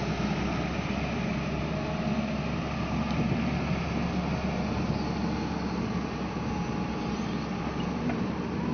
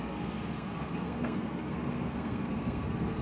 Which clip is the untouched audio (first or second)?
first